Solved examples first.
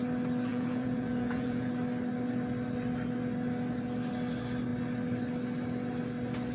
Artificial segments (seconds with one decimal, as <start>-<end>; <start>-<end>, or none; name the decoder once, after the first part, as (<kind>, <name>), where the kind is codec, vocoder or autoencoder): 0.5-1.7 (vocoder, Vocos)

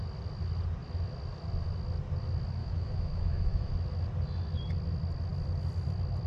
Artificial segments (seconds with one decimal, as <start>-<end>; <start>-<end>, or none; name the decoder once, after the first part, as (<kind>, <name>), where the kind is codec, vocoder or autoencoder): 2.6-3.7 (autoencoder, DAC-VAE)

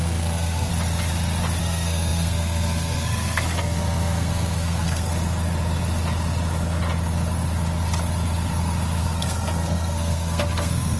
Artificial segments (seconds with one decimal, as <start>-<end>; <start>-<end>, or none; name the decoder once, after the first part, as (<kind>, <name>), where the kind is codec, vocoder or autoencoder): 0.0-0.7 (codec, SNAC); 1.6-5.1; 9.0-11.0

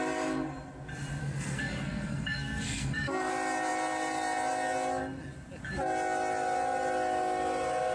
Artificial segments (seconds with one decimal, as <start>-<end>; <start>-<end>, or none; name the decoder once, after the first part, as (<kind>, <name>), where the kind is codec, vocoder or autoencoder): 1.2-3.3 (codec, SNAC)

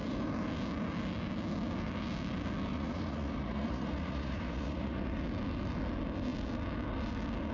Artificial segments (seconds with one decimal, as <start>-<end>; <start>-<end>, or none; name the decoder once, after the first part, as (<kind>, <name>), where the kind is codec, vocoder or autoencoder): 2.7-5.0 (vocoder, Vocos)